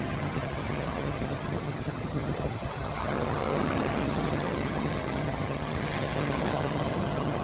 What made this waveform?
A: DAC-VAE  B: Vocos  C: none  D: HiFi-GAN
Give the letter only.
D